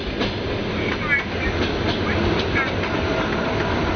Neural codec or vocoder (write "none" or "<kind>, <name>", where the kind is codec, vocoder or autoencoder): none